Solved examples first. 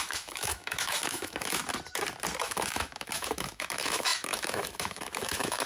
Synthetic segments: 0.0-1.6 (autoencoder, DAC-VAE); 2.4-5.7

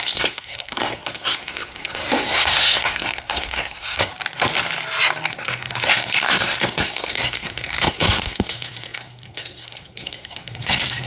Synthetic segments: 0.0-4.1 (codec, SNAC); 5.3-11.1